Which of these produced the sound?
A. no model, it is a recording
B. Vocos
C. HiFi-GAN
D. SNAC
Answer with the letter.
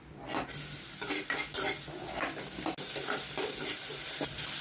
A